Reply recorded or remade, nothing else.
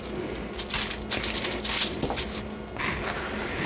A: recorded